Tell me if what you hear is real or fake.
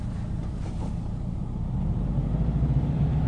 fake